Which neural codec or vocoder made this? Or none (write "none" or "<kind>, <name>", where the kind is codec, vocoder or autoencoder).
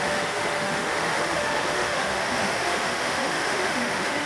autoencoder, DAC-VAE